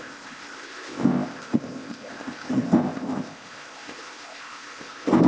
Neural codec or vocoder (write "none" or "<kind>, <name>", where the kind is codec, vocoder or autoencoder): codec, ZipCodec